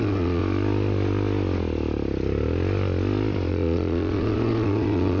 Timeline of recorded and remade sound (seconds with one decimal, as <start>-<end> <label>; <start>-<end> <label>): 0.0-0.4 remade; 0.4-3.5 recorded; 3.5-5.2 remade